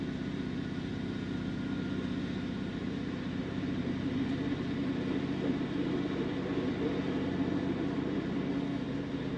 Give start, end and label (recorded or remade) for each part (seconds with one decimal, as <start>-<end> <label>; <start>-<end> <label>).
0.0-2.8 recorded; 2.8-4.1 remade; 4.1-9.4 recorded